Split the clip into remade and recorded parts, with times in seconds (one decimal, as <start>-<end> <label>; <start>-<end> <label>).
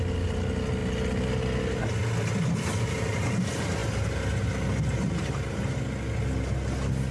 0.0-7.1 recorded